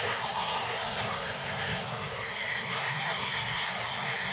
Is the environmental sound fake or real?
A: fake